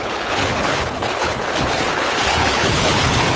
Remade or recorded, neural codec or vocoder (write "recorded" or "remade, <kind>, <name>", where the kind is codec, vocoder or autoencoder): remade, codec, HILCodec